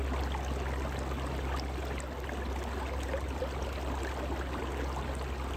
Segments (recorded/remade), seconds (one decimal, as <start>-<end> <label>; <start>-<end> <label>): 0.0-5.6 recorded